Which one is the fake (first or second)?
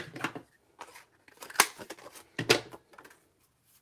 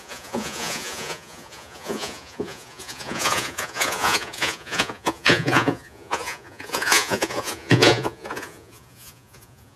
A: second